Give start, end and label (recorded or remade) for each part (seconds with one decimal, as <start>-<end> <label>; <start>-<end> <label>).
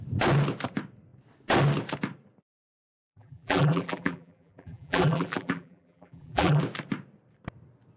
0.0-2.8 recorded; 2.8-6.6 remade; 6.6-8.0 recorded